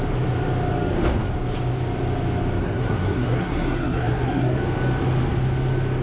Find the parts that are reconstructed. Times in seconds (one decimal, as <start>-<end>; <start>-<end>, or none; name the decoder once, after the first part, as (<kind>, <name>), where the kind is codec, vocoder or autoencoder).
2.6-4.6 (codec, SNAC)